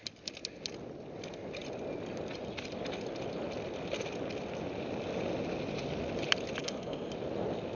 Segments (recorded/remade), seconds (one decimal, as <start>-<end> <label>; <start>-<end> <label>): 0.0-6.6 recorded; 6.6-7.1 remade; 7.1-7.7 recorded